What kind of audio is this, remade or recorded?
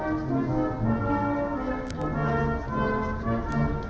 recorded